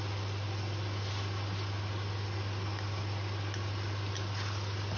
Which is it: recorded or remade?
recorded